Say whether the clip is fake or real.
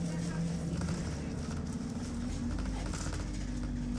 real